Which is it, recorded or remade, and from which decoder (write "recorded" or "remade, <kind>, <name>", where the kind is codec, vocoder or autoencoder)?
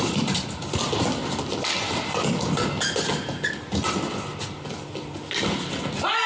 recorded